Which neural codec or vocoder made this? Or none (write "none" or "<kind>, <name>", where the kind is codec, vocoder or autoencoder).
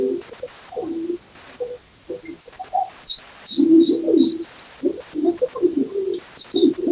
vocoder, BigVGAN v2